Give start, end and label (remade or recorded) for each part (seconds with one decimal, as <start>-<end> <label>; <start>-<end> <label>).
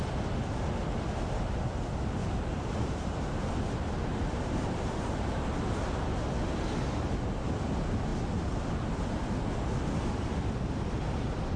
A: 0.0-2.2 recorded; 2.2-3.5 remade; 3.5-4.0 recorded; 4.0-5.6 remade; 5.6-11.6 recorded